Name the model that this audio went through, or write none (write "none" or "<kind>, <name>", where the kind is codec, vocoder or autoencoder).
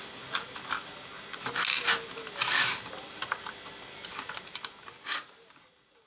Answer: none